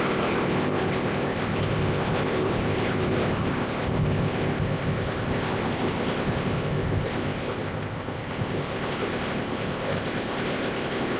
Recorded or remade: remade